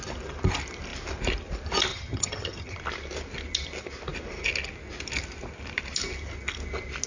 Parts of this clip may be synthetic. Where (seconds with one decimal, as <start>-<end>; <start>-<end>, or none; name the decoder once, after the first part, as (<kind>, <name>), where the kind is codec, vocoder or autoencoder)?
1.9-2.8 (vocoder, HiFi-GAN)